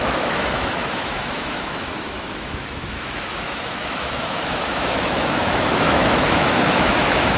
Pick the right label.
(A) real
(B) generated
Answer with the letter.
B